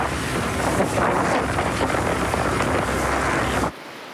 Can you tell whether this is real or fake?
real